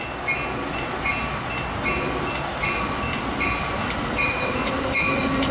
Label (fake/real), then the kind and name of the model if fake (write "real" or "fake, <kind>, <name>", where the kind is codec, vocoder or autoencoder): real